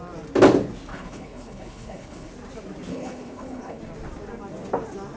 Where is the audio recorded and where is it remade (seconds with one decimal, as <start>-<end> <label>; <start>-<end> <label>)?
0.0-0.9 recorded; 0.9-2.3 remade; 2.3-2.9 recorded; 2.9-3.8 remade; 3.8-5.2 recorded